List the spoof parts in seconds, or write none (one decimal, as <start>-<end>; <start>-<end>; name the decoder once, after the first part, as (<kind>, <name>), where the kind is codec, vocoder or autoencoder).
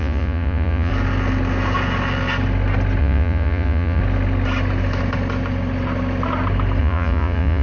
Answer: 0.0-0.9 (vocoder, Vocos); 3.0-4.0; 6.8-7.6